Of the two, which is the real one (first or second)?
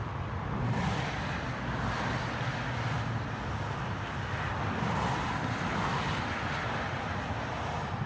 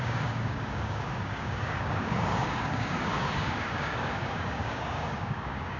first